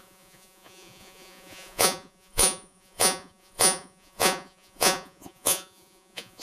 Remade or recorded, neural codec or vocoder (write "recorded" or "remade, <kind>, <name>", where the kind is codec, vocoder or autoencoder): remade, vocoder, Vocos